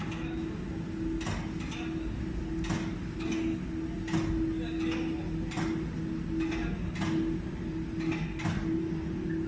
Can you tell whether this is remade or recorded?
recorded